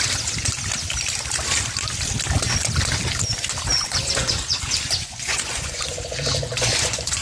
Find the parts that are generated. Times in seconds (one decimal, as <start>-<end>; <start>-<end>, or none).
3.7-7.2